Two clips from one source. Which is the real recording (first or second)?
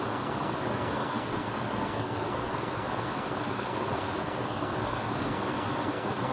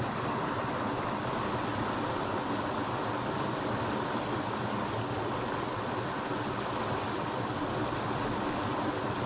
second